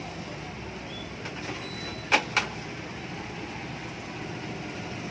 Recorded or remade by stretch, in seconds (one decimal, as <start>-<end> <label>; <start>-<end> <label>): 0.0-5.1 recorded